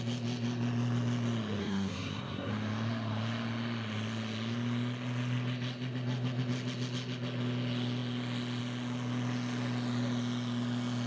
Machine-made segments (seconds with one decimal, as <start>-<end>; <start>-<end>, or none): 1.6-2.5

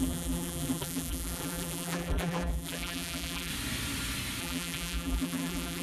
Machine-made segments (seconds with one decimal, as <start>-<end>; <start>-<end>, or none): 0.0-3.5; 4.4-5.8

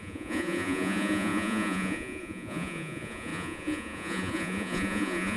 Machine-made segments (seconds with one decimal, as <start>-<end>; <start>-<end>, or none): 0.0-5.4

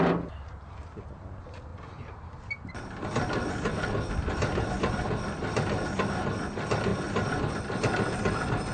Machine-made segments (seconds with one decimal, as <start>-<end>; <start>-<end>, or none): 1.7-2.7

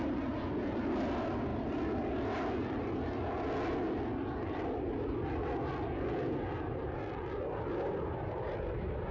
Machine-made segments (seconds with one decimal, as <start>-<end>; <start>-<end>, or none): none

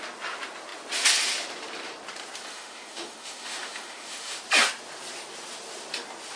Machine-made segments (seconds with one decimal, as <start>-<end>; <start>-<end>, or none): 2.5-4.4

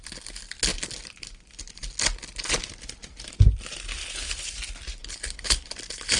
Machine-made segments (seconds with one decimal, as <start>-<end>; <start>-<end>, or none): 4.0-4.5; 5.0-5.7